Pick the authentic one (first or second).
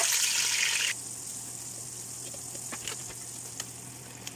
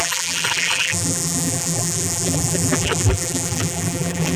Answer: first